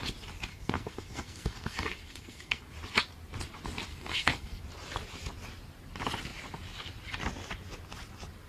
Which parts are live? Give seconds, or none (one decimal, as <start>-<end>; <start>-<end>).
0.0-0.5; 2.7-3.9; 4.6-8.5